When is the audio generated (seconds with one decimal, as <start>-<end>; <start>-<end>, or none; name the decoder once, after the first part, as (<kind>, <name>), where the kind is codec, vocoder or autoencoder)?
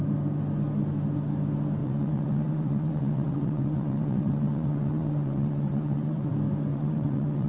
1.8-6.3 (vocoder, WaveNeXt); 6.7-7.5